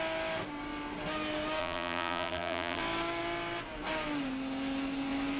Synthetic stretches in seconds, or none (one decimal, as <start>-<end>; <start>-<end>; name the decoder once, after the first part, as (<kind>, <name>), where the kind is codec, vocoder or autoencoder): 1.6-2.8 (vocoder, BigVGAN v2)